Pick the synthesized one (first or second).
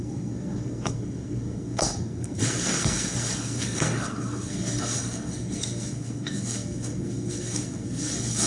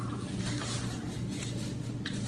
first